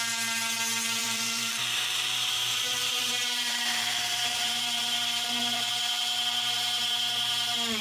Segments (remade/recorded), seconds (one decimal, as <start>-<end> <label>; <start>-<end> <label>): 0.0-1.0 recorded; 1.0-5.7 remade; 5.7-7.8 recorded